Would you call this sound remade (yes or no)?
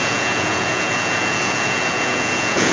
yes